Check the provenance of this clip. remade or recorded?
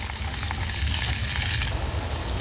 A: remade